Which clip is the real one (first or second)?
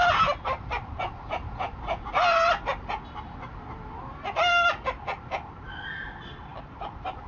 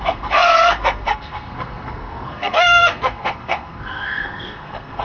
first